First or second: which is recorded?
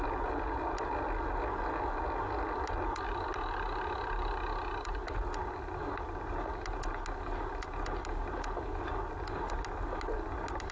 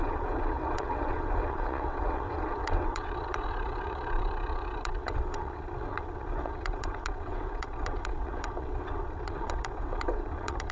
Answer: first